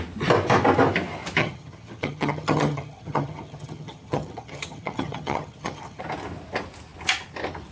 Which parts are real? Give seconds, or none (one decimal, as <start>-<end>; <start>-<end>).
0.0-1.4; 6.0-7.7